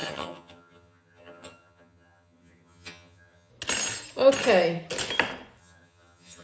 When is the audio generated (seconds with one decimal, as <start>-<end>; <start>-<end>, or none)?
0.0-3.5; 5.6-6.4